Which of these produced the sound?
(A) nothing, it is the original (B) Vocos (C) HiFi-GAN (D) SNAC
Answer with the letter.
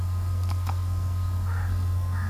D